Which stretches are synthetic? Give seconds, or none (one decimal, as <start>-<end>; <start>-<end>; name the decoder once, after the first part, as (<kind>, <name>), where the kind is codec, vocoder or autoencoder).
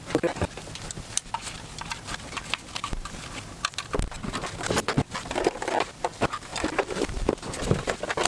6.5-7.5 (vocoder, BigVGAN v2)